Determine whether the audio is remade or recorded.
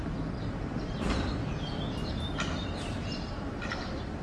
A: remade